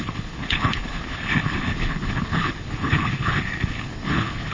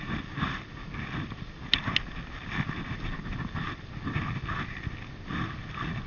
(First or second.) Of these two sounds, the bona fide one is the second